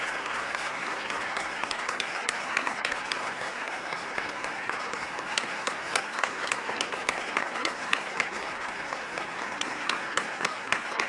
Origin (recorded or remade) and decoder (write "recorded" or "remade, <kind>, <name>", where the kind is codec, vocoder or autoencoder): remade, codec, SNAC